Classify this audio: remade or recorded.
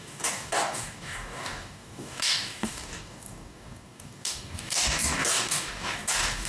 remade